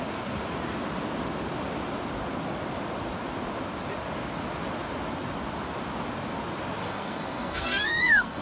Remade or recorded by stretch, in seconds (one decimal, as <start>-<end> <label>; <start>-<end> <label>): 0.0-6.8 recorded; 6.8-8.4 remade